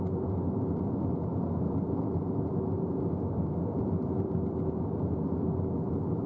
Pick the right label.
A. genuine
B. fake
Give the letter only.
A